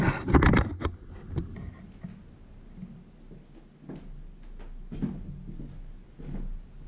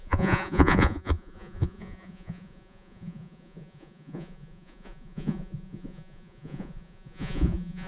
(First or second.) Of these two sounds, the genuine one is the first